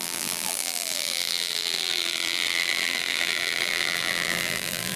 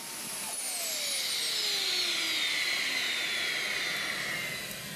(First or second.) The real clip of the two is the second